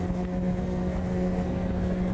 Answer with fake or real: fake